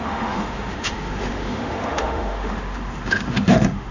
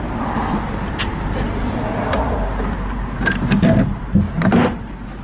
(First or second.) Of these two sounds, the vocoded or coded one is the first